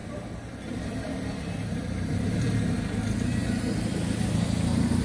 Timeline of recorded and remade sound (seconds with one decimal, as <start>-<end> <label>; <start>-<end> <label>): 0.0-3.0 remade; 3.0-5.0 recorded